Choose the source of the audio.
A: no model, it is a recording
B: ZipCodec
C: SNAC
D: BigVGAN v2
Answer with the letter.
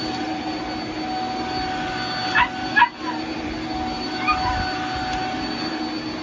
A